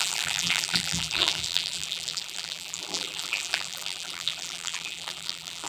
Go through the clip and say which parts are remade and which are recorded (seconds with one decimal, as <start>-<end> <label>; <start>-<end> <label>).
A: 0.0-5.7 remade